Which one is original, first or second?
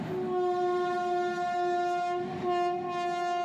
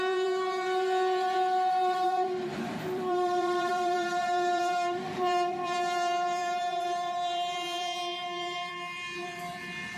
first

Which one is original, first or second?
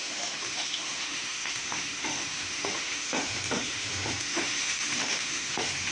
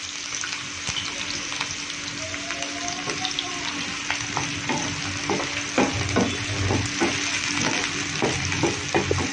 second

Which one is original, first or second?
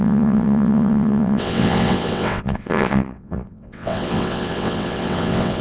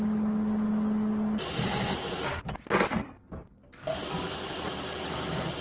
second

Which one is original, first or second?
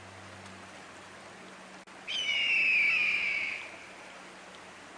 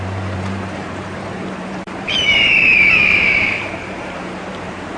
first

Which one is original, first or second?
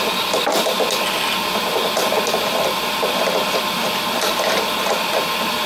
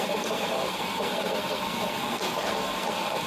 first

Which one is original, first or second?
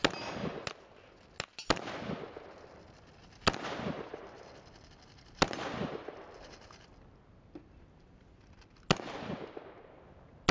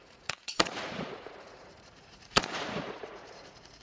first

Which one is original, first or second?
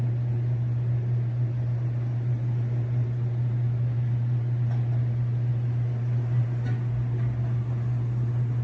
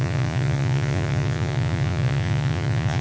first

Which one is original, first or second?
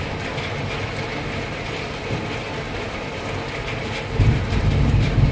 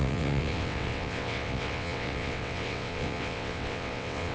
first